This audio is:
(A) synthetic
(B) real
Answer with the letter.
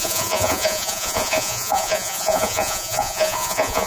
A